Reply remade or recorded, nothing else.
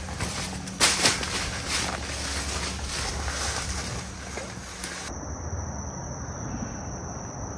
recorded